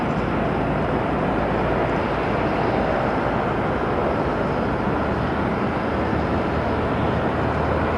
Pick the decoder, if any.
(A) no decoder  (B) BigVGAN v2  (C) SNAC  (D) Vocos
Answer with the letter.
A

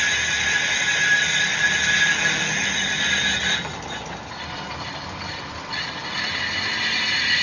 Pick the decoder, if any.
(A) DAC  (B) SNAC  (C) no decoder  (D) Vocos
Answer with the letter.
C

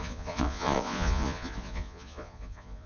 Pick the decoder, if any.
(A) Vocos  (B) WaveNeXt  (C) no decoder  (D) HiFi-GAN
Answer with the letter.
A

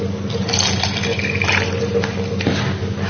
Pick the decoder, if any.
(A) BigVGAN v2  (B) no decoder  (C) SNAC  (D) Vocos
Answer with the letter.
B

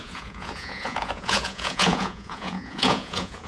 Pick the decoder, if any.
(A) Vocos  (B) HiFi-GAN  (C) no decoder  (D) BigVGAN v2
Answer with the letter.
A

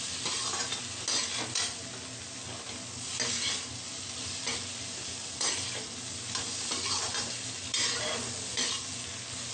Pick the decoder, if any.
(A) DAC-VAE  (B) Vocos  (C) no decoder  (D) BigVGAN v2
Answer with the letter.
C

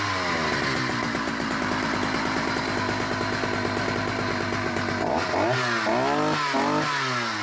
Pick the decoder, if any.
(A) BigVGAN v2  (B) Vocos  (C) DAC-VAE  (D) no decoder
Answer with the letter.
D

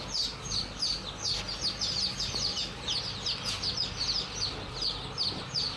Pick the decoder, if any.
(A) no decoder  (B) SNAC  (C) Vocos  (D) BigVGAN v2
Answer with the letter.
A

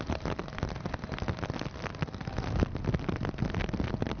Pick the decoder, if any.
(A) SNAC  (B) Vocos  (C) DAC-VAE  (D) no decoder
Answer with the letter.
D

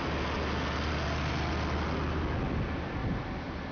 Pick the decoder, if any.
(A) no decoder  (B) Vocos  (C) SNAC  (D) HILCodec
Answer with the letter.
A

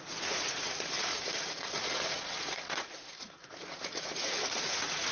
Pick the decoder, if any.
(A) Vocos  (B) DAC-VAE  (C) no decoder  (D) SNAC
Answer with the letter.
A